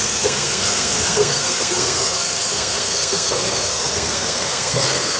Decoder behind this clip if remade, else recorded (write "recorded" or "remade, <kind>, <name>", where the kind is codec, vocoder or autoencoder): remade, codec, SNAC